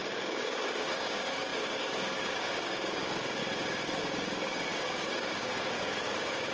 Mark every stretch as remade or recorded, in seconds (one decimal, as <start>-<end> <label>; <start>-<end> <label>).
0.0-3.4 remade; 3.4-4.0 recorded; 4.0-6.5 remade